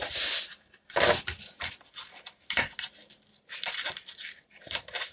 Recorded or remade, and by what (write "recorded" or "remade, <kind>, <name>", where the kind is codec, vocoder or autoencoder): recorded